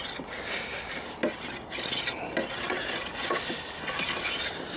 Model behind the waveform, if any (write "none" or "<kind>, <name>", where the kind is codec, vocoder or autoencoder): none